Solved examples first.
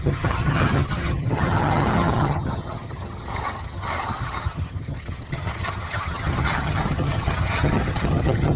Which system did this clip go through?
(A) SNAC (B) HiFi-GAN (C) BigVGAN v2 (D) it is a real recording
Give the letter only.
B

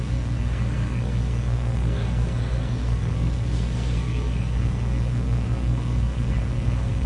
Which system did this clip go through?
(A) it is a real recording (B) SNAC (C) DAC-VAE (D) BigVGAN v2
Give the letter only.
B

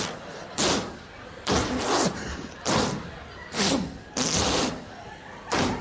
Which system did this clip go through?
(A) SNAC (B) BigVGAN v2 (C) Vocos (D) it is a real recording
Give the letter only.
B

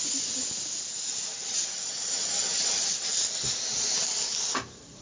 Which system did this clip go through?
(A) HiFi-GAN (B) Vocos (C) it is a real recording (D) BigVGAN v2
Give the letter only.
D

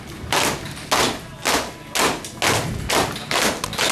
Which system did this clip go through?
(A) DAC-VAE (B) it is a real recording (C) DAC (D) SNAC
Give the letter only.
B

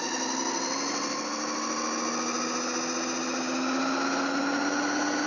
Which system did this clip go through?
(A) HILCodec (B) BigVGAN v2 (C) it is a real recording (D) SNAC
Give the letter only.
C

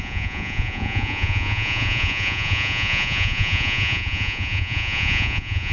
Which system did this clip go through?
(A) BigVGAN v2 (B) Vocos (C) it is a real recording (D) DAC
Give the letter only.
B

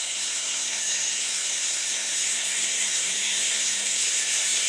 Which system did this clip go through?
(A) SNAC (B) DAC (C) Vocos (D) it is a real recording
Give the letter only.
A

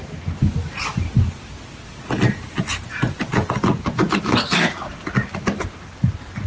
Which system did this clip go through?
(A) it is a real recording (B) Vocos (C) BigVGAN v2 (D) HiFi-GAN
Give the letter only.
A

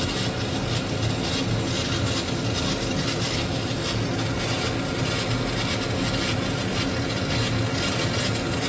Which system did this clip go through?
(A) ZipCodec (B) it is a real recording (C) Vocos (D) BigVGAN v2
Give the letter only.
B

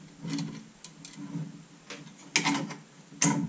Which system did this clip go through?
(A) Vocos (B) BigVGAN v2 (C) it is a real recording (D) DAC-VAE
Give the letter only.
C